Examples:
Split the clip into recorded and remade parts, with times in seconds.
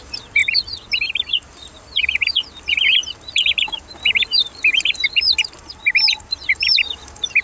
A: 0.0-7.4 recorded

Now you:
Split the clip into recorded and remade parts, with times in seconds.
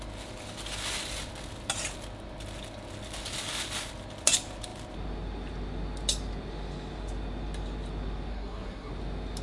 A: 0.0-8.3 recorded; 8.3-8.9 remade; 8.9-9.4 recorded